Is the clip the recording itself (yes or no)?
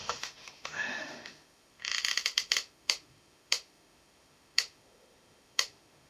no